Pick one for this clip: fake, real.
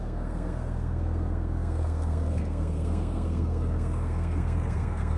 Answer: fake